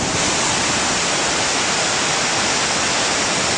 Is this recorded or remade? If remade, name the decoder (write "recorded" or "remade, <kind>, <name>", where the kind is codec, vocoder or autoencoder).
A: recorded